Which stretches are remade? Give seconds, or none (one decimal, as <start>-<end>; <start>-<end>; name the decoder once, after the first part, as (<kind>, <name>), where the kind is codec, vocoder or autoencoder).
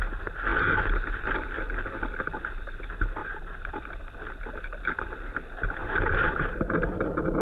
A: 3.2-4.0 (vocoder, BigVGAN v2); 5.8-6.6